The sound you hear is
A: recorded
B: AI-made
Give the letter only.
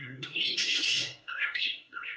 B